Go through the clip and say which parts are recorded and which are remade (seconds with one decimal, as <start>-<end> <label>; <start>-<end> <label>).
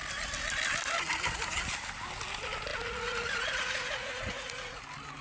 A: 0.0-2.7 recorded; 2.7-4.8 remade; 4.8-5.2 recorded